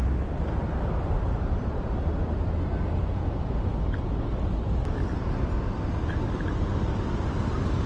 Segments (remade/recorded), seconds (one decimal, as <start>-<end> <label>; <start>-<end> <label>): 0.0-7.9 recorded